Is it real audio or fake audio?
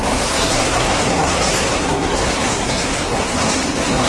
fake